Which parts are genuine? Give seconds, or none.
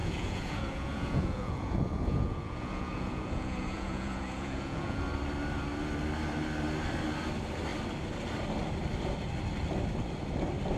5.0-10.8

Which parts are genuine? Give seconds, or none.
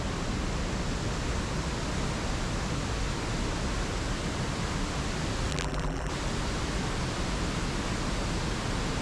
0.0-5.5; 6.1-9.0